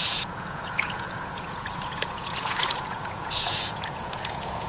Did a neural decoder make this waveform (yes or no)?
yes